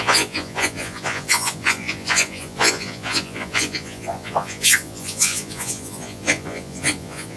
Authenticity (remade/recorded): remade